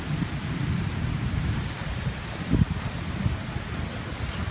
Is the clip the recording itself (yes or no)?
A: yes